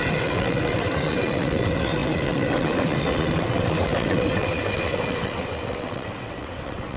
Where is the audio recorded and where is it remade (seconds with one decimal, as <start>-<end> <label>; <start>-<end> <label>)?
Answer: 0.0-7.0 remade